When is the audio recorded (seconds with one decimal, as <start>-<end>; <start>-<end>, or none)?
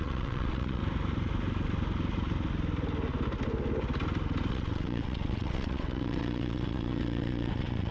0.8-4.5